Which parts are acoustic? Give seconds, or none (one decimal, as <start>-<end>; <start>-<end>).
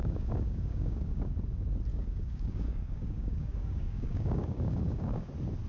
1.3-1.9; 5.3-5.7